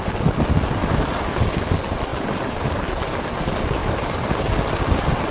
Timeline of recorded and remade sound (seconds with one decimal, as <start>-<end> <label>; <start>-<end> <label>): 0.0-0.8 recorded; 0.8-1.4 remade; 1.4-2.1 recorded; 2.1-2.9 remade; 2.9-3.8 recorded; 3.8-4.4 remade; 4.4-5.3 recorded